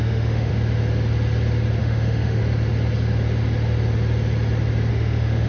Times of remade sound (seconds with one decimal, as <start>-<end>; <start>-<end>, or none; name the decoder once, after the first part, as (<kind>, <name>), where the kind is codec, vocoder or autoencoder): 0.0-0.5 (autoencoder, DAC-VAE); 1.8-2.4; 4.9-5.5